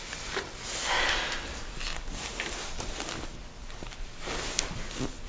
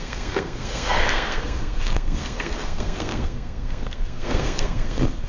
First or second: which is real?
first